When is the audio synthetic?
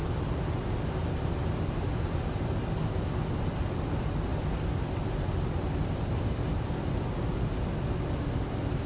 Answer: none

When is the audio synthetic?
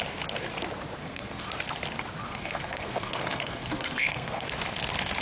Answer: 1.0-1.5 (codec, SNAC); 2.2-4.5